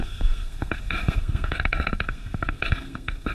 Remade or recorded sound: remade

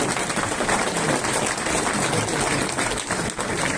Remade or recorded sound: recorded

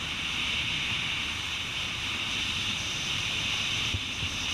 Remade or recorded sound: remade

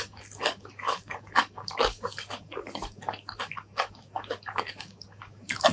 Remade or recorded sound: remade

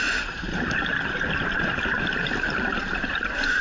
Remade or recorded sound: remade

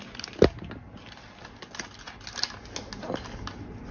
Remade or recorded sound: recorded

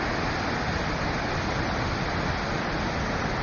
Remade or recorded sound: recorded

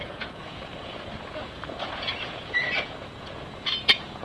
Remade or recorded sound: remade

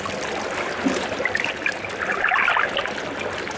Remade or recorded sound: recorded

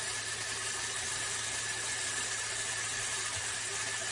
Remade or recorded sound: recorded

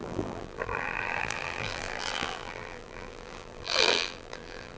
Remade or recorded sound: remade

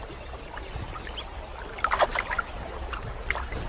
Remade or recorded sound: recorded